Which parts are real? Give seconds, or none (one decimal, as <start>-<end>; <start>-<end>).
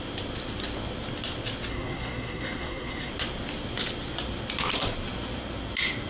0.0-1.7; 3.1-6.1